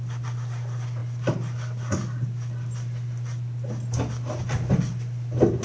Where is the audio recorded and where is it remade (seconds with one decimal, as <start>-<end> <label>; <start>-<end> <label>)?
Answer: 0.0-5.6 recorded